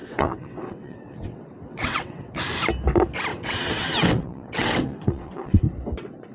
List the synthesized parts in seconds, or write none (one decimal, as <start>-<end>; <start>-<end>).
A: 0.0-2.4; 3.3-5.6